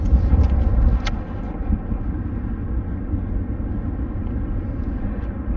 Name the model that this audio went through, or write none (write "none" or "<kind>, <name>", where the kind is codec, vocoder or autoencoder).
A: none